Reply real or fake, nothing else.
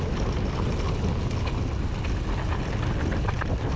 real